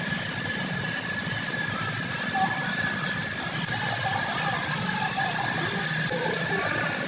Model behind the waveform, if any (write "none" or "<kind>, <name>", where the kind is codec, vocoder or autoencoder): none